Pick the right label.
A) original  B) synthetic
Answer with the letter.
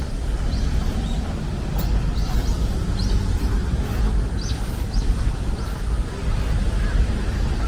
A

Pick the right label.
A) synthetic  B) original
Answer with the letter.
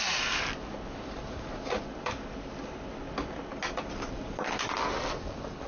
B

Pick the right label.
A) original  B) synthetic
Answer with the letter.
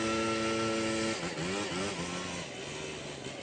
A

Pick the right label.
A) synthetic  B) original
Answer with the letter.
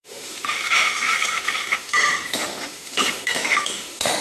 A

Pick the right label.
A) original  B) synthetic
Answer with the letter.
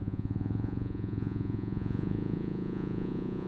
B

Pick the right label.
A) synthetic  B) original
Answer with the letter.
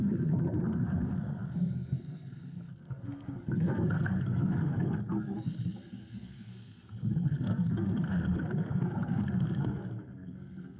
A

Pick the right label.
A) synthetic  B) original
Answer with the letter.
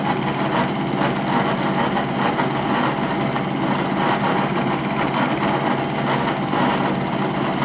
B